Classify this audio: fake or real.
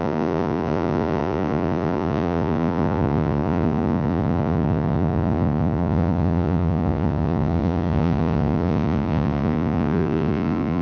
fake